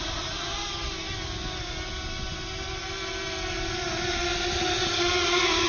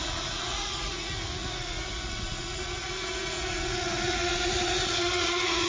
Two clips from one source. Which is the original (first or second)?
first